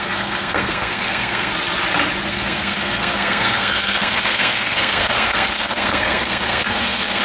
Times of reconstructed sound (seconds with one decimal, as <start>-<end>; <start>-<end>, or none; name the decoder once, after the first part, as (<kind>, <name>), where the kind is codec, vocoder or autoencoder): 0.0-1.5 (codec, SNAC); 2.3-7.2